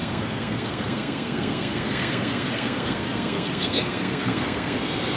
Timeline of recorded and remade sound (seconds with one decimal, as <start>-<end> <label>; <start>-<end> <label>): 0.0-5.2 remade